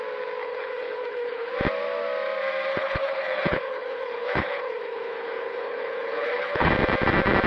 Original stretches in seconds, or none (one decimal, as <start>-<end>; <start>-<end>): 0.0-0.4; 1.5-2.7; 6.7-7.5